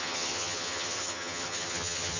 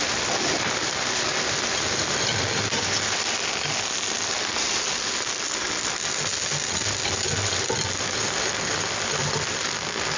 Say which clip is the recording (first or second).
second